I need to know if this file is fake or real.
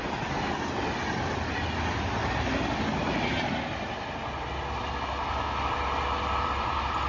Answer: real